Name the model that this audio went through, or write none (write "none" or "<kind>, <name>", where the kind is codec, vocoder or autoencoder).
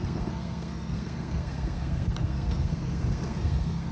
codec, SNAC